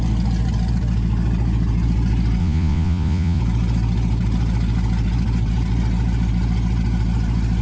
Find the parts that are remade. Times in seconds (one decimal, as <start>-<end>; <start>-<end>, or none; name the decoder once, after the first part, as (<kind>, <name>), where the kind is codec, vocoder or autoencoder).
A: 2.4-3.4 (vocoder, Vocos)

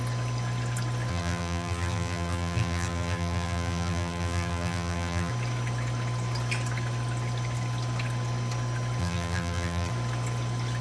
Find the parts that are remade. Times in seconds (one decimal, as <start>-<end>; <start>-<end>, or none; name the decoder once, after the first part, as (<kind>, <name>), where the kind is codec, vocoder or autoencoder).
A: 1.1-5.3 (vocoder, BigVGAN v2); 9.0-9.9

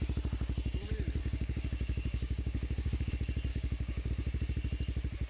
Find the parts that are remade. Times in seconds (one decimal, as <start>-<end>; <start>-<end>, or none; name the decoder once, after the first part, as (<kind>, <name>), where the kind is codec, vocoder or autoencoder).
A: 1.2-3.1 (codec, DAC); 3.5-4.1

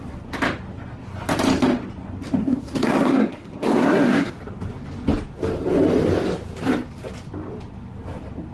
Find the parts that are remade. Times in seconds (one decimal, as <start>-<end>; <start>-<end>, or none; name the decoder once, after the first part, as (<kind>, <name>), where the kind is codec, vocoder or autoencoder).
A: 2.4-4.3 (codec, SNAC)

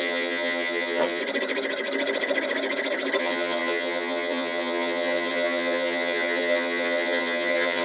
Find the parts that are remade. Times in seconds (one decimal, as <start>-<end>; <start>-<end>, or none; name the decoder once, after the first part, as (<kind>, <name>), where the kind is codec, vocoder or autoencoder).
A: 0.0-1.2 (vocoder, HiFi-GAN); 3.2-7.8

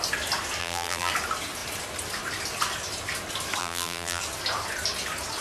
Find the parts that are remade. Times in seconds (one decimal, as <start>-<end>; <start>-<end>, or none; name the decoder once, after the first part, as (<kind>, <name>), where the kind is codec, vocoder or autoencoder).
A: 0.6-1.1 (vocoder, BigVGAN v2); 3.6-4.2

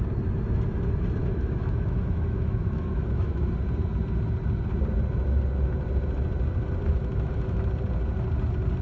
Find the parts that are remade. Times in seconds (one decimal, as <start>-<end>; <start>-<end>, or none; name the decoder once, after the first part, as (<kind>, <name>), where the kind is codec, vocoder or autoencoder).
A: 1.2-3.5 (autoencoder, DAC-VAE); 7.0-7.7

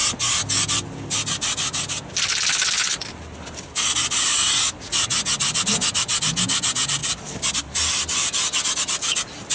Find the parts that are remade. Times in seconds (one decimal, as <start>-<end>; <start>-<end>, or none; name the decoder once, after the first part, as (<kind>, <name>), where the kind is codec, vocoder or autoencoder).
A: 7.0-7.5 (vocoder, BigVGAN v2)